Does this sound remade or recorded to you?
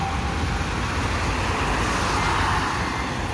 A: recorded